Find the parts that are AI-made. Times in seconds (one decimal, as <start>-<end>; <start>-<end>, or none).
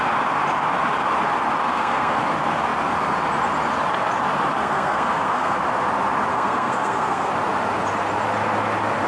1.7-2.2; 4.6-5.6; 6.3-7.3